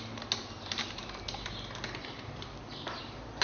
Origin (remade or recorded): recorded